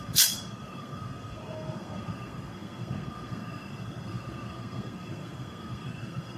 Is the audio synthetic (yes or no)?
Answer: yes